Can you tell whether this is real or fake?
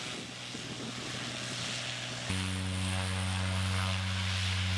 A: real